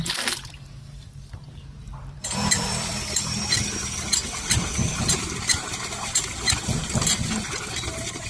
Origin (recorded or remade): remade